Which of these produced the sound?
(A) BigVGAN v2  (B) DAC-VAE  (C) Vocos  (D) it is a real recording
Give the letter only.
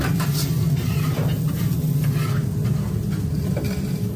D